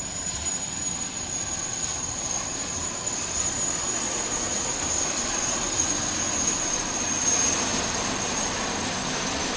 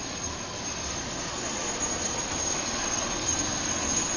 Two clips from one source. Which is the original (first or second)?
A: second